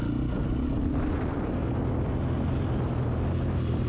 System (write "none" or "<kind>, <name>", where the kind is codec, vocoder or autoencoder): none